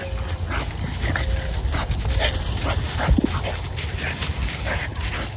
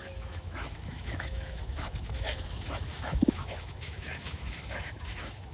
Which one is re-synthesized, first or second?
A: second